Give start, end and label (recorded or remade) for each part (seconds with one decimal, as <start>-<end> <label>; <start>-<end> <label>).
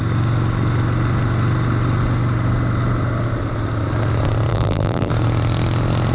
0.0-4.5 recorded; 4.5-5.1 remade; 5.1-6.1 recorded